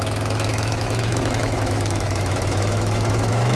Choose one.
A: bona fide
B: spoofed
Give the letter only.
B